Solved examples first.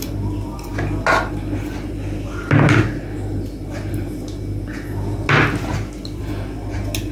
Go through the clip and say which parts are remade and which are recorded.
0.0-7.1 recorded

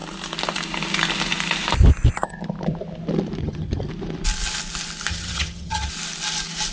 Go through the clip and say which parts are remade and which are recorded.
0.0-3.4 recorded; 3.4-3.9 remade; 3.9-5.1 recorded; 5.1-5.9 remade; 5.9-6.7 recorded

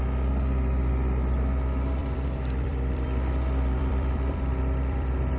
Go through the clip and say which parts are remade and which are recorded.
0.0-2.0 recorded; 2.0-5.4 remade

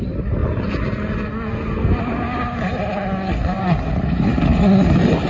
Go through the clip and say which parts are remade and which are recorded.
0.0-5.3 recorded

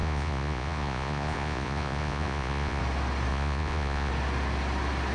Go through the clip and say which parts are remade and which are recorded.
0.0-2.8 remade; 2.8-3.3 recorded; 3.3-4.1 remade; 4.1-5.1 recorded

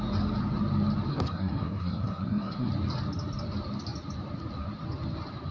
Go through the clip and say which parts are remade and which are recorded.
0.0-1.1 recorded; 1.1-2.7 remade; 2.7-5.5 recorded